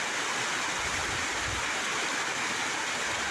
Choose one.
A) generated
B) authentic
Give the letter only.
B